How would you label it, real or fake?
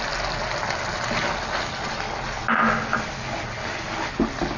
real